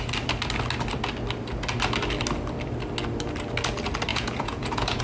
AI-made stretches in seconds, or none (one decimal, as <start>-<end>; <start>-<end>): 4.1-5.0